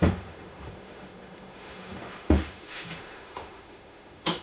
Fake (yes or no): yes